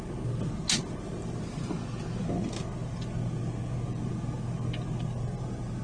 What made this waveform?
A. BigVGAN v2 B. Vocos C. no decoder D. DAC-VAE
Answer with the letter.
C